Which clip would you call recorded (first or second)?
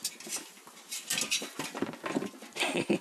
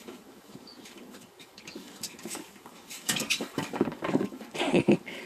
first